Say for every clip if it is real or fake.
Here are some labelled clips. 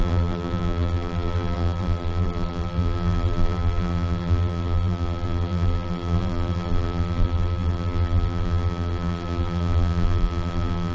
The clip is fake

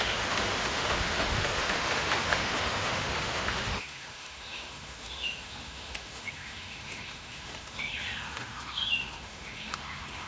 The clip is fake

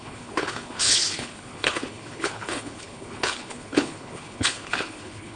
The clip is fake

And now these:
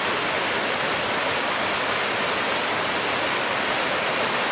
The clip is real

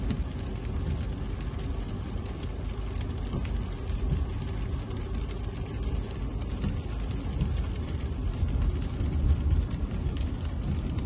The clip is real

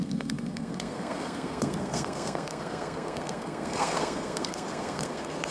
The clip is fake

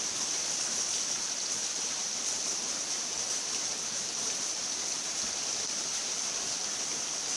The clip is fake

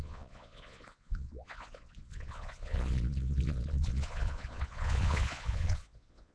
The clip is fake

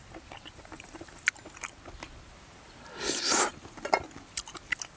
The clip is real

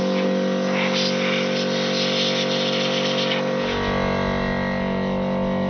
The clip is real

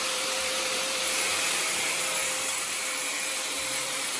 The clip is fake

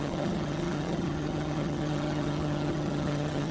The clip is fake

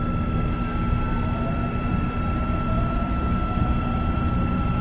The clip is fake